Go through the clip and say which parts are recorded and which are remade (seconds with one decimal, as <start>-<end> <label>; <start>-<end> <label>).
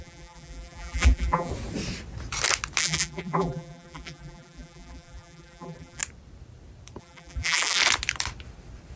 0.0-1.5 remade; 1.5-2.8 recorded; 2.8-6.0 remade; 6.0-7.0 recorded; 7.0-7.8 remade; 7.8-9.0 recorded